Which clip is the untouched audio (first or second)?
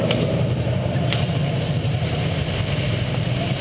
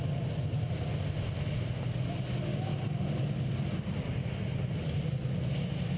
second